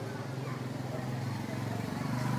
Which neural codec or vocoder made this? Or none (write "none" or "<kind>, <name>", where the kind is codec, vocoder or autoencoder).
none